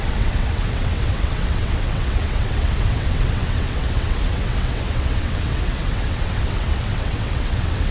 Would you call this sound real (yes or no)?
no